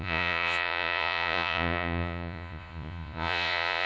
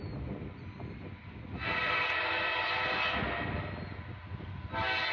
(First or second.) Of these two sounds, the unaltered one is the second